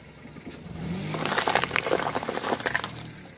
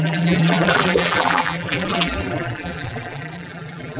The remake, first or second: second